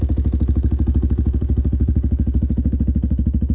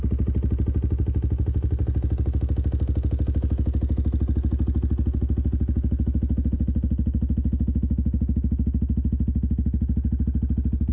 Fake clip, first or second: first